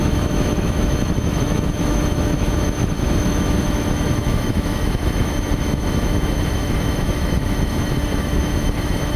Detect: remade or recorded remade